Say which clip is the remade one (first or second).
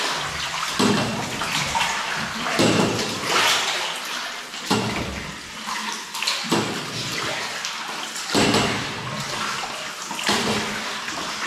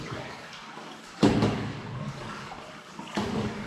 second